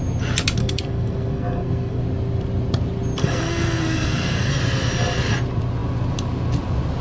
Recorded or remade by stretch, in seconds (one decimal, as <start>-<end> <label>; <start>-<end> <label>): 0.0-0.6 recorded; 0.6-2.0 remade; 2.0-3.2 recorded; 3.2-4.5 remade; 4.5-7.0 recorded

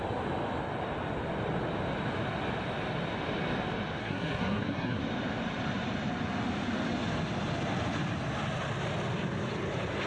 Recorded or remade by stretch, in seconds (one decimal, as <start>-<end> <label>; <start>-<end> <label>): 0.0-4.0 recorded; 4.0-5.0 remade; 5.0-10.1 recorded

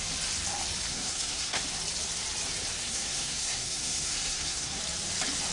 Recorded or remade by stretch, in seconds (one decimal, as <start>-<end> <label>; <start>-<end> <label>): 0.0-0.9 recorded; 0.9-1.6 remade; 1.6-2.8 recorded; 2.8-4.8 remade; 4.8-5.5 recorded

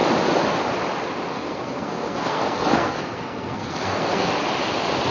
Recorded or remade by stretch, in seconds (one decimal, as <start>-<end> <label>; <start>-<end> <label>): 0.0-1.3 recorded; 1.3-4.3 remade; 4.3-5.1 recorded

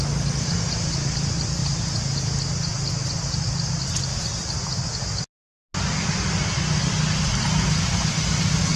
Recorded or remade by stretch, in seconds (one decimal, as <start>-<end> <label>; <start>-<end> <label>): 0.0-8.8 recorded

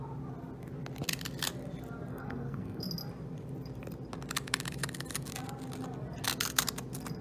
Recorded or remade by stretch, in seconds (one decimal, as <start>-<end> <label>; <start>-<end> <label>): 0.0-2.1 recorded; 2.1-2.9 remade; 2.9-7.2 recorded